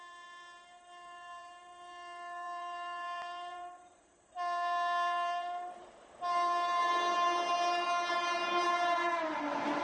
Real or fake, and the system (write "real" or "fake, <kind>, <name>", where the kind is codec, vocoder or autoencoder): fake, vocoder, BigVGAN v2